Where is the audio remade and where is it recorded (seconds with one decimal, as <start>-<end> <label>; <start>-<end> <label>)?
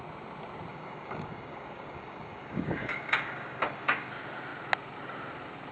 0.0-0.7 recorded; 0.7-4.1 remade; 4.1-5.7 recorded